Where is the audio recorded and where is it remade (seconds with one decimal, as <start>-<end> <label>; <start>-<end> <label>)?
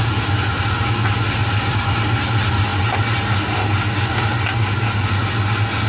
0.0-1.4 recorded; 1.4-2.1 remade; 2.1-5.9 recorded